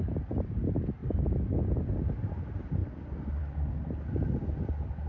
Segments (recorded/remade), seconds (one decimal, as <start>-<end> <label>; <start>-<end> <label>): 0.0-1.0 recorded; 1.0-1.9 remade; 1.9-2.8 recorded; 2.8-3.4 remade; 3.4-5.1 recorded